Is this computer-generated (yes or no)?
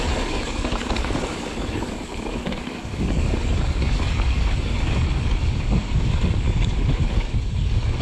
yes